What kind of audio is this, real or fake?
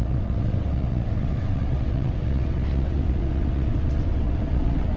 fake